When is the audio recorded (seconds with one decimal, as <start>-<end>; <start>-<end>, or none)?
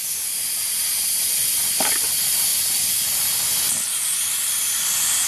0.0-1.0; 1.6-5.3